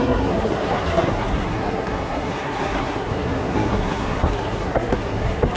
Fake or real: fake